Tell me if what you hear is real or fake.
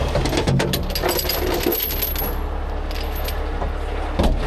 real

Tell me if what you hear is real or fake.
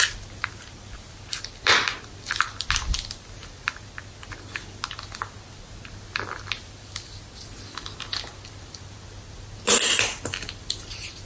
real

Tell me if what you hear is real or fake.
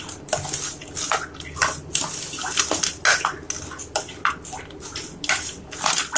real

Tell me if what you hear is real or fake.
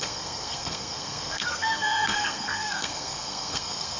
fake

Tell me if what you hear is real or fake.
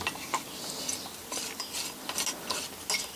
real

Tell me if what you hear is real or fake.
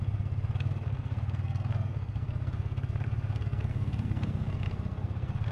fake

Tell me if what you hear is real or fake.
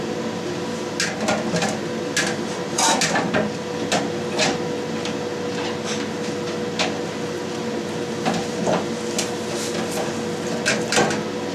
real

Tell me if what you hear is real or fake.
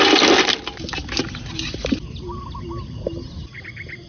real